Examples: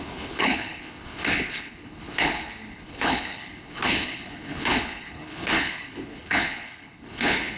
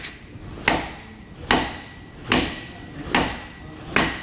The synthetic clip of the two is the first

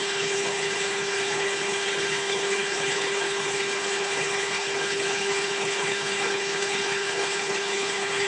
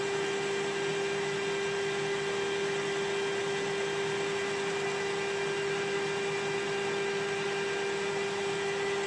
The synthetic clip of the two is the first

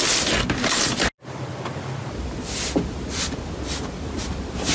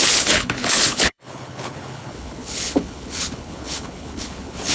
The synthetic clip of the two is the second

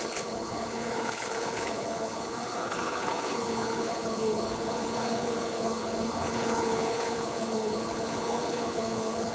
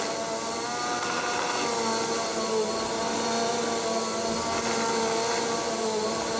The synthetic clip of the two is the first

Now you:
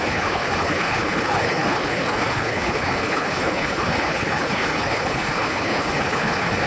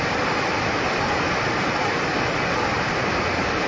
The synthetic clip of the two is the first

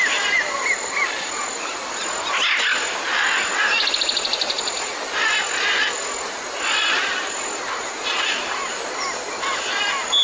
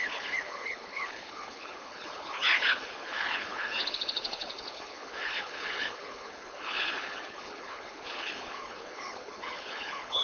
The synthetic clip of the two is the second